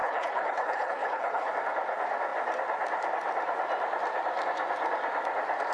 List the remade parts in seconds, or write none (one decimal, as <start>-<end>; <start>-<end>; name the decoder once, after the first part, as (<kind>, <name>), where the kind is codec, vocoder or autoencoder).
0.0-1.5 (codec, HILCodec)